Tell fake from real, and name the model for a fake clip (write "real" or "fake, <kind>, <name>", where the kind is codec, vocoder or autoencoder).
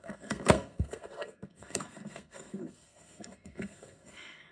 fake, codec, SNAC